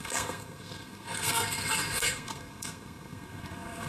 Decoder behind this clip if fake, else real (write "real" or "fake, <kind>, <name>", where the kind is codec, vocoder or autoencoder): fake, codec, SNAC